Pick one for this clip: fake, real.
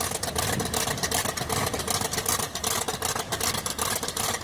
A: real